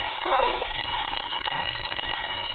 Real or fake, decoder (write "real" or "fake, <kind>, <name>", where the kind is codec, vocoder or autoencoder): fake, codec, SNAC